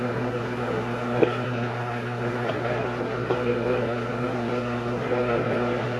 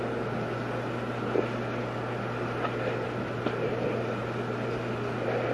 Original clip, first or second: second